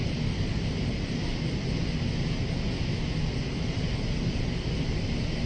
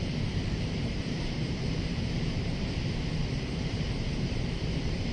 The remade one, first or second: second